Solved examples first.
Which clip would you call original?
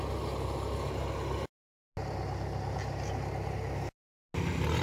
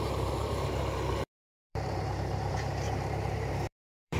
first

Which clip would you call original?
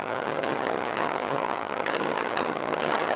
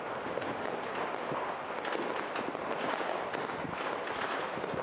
second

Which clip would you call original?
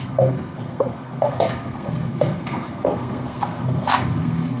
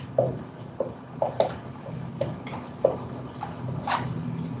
second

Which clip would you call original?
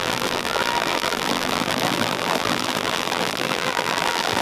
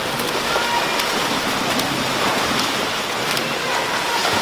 second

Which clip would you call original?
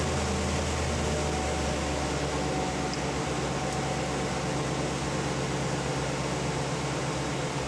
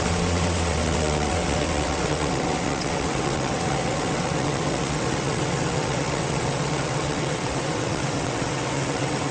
first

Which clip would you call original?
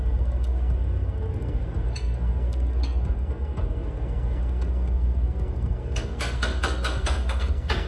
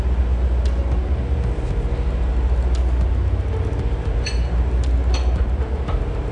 second